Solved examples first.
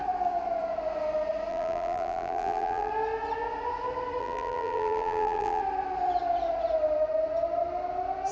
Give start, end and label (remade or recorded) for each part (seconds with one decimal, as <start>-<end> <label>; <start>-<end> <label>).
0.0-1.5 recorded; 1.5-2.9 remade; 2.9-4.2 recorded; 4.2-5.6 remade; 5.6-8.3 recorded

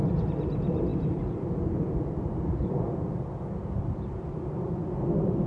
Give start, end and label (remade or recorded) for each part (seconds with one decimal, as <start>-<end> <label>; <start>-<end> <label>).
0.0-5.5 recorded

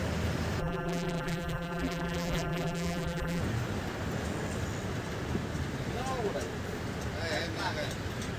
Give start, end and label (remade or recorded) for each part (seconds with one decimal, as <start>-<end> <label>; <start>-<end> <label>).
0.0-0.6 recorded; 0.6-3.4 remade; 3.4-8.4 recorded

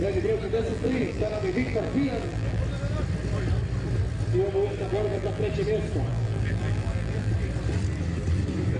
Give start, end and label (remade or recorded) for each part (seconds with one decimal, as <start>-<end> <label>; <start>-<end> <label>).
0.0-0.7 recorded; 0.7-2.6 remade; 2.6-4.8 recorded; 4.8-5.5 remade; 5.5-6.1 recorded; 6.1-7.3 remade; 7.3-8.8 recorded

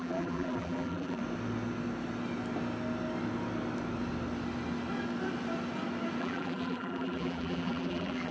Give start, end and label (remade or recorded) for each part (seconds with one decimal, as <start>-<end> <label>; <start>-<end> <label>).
0.0-1.2 remade; 1.2-6.2 recorded; 6.2-8.3 remade

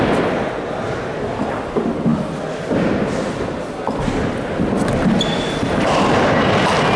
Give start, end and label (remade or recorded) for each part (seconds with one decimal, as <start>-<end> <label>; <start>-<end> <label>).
0.0-7.0 recorded

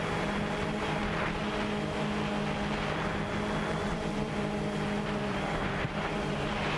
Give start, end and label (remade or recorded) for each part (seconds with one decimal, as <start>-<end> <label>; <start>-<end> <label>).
0.0-1.0 remade; 1.0-3.8 recorded; 3.8-6.8 remade